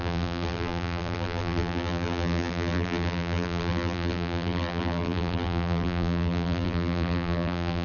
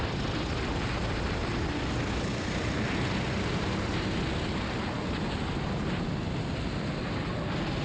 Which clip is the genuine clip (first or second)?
second